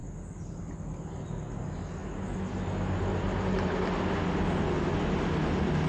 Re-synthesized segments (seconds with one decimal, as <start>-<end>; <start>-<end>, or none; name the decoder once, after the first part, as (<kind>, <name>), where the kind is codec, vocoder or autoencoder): none